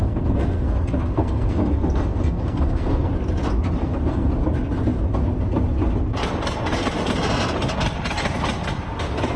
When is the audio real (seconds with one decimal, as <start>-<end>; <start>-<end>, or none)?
3.1-3.8; 4.3-9.4